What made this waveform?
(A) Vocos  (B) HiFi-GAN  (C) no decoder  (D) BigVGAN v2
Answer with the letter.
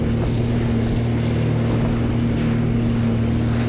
C